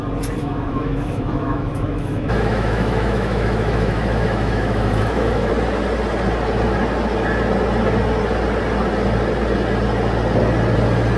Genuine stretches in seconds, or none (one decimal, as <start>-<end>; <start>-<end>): 0.0-0.4; 5.5-11.2